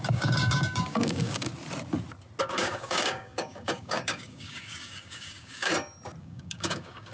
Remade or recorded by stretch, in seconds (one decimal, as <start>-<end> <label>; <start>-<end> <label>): 0.0-1.5 remade; 1.5-2.4 recorded; 2.4-5.7 remade; 5.7-6.2 recorded; 6.2-7.1 remade